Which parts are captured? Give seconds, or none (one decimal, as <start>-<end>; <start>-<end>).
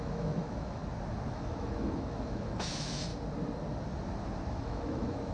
0.8-1.3; 3.1-4.5